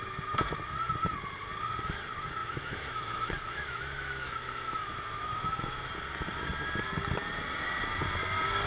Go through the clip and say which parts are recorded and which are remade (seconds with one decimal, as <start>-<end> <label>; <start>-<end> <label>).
0.0-2.4 recorded; 2.4-5.9 remade; 5.9-8.7 recorded